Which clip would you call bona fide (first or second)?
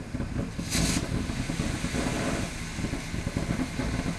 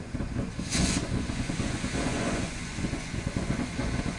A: first